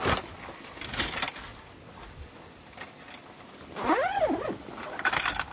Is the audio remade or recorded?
recorded